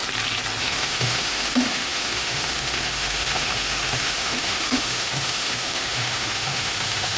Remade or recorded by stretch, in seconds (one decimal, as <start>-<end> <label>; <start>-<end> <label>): 0.0-0.6 recorded; 0.6-7.2 remade